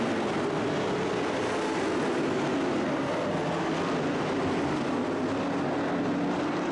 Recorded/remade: recorded